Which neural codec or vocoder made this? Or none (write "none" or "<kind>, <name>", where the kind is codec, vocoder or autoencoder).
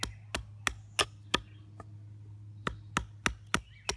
none